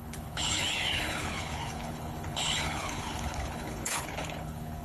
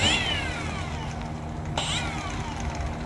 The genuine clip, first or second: second